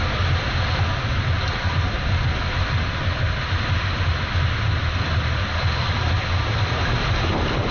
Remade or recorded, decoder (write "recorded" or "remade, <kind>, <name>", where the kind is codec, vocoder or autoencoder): recorded